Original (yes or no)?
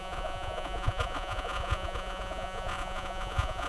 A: no